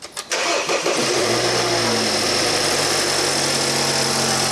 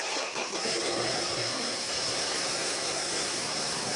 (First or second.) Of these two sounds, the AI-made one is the second